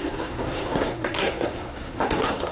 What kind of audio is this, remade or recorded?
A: remade